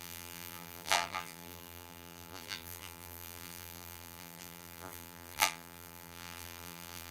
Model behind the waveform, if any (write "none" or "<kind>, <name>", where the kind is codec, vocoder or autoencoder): vocoder, BigVGAN v2